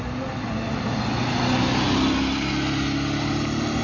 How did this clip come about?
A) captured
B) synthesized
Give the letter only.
A